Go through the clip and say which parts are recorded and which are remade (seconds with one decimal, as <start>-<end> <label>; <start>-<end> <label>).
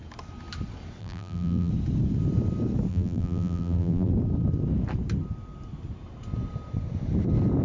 0.0-1.0 recorded; 1.0-1.7 remade; 1.7-2.9 recorded; 2.9-4.1 remade; 4.1-7.6 recorded